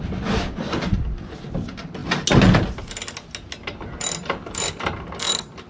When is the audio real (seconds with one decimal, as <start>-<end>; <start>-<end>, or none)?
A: 0.0-5.7